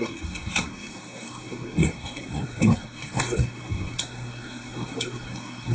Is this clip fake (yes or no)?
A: yes